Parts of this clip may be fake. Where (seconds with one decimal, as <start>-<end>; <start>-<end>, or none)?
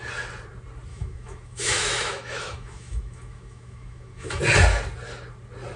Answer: 0.9-4.4